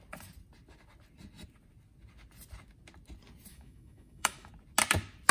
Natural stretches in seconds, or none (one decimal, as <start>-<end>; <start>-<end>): 0.0-3.5; 4.5-5.3